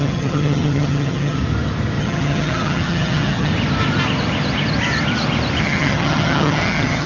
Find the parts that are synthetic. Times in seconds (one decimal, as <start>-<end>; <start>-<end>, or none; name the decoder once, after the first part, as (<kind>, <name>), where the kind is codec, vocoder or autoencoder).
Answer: 0.0-1.4 (vocoder, HiFi-GAN); 2.0-3.5; 5.6-7.1

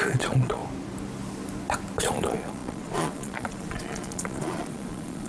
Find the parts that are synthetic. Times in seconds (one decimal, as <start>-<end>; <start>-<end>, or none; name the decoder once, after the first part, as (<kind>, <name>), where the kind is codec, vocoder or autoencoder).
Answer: 0.0-0.6 (vocoder, Vocos); 2.0-5.3

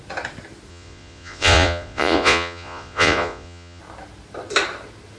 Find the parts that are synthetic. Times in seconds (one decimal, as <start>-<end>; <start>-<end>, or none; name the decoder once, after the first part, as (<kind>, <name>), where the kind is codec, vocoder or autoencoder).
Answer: 0.7-3.8 (vocoder, Vocos)

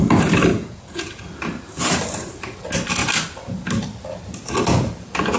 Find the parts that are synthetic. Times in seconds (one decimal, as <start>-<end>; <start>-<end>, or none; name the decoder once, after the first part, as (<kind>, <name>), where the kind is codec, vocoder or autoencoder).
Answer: 0.5-1.2 (vocoder, Vocos)